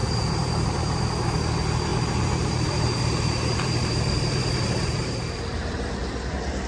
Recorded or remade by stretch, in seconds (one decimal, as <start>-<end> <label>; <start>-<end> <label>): 0.0-1.0 remade; 1.0-1.9 recorded; 1.9-5.9 remade; 5.9-6.7 recorded